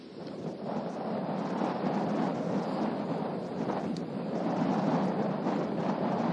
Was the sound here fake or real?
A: real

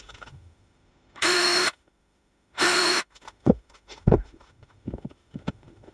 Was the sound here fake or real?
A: fake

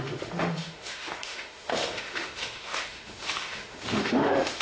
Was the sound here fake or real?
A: fake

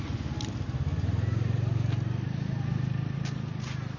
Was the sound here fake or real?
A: real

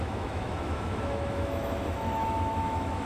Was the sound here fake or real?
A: fake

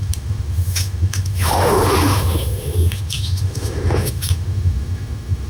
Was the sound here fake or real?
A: fake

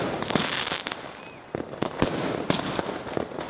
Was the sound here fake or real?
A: real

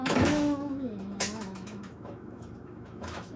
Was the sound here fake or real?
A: fake